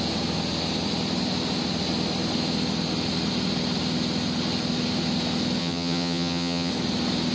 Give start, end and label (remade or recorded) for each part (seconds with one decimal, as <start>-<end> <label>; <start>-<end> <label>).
0.0-5.6 recorded; 5.6-6.7 remade; 6.7-7.3 recorded